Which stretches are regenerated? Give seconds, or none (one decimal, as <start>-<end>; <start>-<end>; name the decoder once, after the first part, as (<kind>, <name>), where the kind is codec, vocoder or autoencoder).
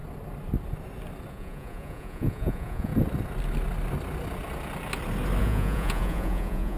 1.3-2.9 (vocoder, Vocos); 5.4-6.8